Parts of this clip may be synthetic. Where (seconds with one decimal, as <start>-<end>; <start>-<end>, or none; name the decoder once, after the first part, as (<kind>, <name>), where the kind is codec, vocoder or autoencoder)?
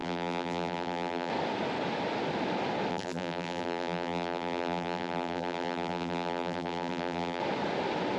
0.0-1.3 (vocoder, BigVGAN v2); 2.9-7.4